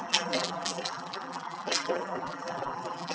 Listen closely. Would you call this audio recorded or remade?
remade